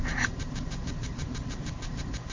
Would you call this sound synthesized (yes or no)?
no